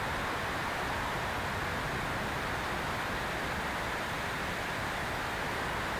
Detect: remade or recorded recorded